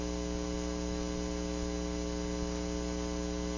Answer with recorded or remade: recorded